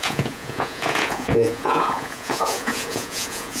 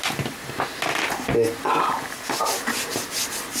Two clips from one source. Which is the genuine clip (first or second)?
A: second